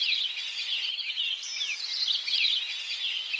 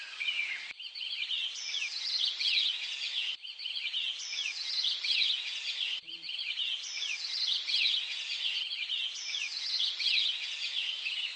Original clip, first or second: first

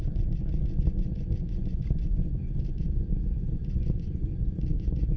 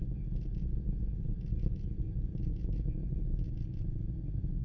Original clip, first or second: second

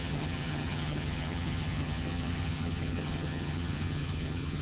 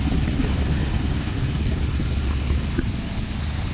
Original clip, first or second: second